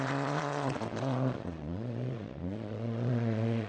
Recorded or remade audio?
remade